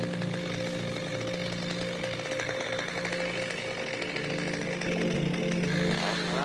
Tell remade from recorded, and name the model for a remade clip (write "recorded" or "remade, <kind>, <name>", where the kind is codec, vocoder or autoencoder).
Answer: recorded